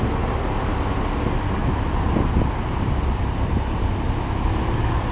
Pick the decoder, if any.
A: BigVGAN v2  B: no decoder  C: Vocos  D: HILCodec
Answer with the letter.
B